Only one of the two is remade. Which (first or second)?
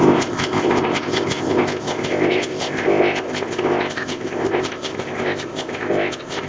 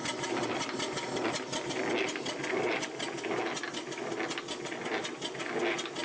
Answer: first